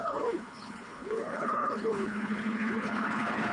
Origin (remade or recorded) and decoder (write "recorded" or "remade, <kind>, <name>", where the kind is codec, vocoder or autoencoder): remade, codec, HILCodec